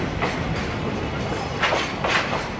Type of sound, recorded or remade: recorded